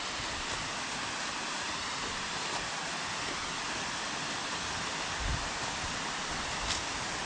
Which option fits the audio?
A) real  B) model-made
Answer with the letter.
A